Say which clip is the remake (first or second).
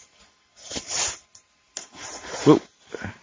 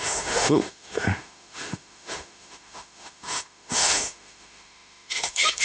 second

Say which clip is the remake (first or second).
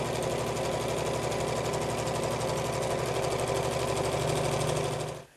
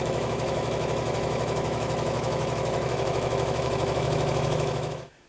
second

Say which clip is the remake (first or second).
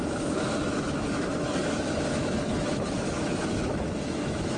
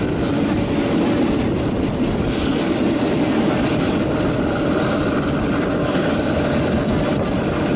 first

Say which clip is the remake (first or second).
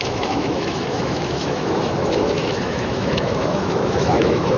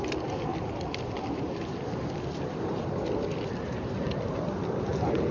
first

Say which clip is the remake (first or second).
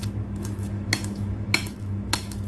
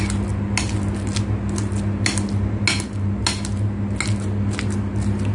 first